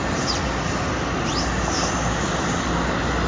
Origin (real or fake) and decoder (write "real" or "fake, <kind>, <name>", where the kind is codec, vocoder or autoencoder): real